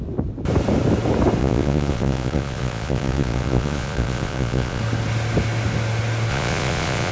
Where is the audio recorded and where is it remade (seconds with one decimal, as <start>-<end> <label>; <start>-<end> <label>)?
0.0-1.4 recorded; 1.4-4.8 remade; 4.8-6.3 recorded; 6.3-7.1 remade